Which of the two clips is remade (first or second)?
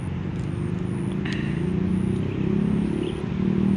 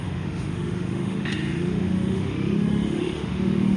second